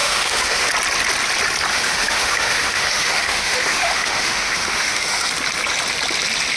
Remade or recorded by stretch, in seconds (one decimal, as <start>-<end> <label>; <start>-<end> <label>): 0.0-0.7 remade; 0.7-1.7 recorded; 1.7-5.3 remade; 5.3-6.6 recorded